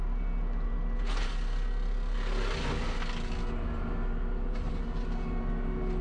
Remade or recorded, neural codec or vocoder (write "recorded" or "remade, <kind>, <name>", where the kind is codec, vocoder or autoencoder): recorded